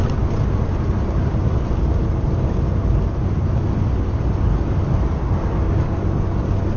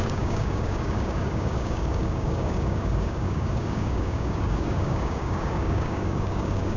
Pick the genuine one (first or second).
first